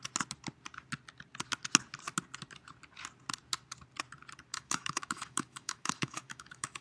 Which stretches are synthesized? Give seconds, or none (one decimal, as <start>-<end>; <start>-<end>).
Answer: 4.5-6.8